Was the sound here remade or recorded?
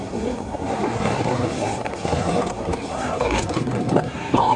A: remade